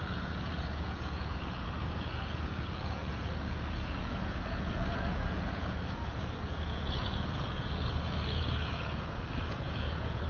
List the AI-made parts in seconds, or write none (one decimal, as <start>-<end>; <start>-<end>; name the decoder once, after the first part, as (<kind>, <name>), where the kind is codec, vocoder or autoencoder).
0.0-10.3 (vocoder, Vocos)